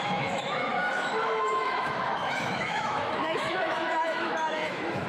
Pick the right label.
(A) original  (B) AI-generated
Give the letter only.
B